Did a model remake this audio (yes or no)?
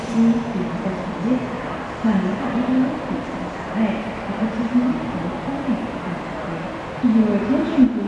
no